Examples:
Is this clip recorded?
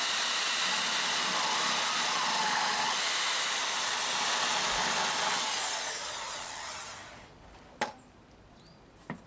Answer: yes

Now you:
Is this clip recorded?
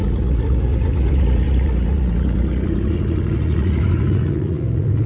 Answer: no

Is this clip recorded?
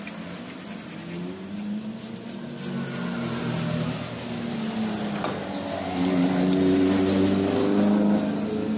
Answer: yes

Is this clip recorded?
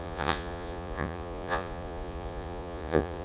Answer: no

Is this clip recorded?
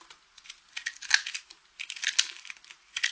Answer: yes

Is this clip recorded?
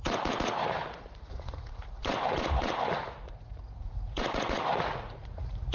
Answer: no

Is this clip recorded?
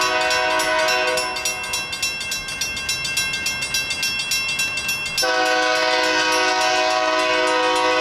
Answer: yes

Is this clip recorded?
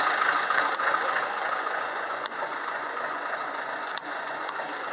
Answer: no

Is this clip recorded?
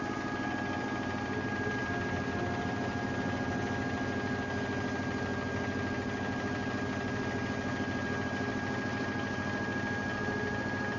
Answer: yes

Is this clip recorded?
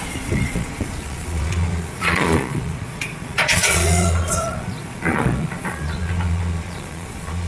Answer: no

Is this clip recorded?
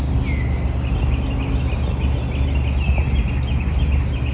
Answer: yes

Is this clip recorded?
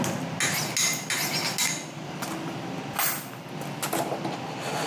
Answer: yes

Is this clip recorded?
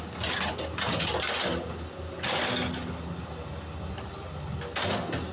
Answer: yes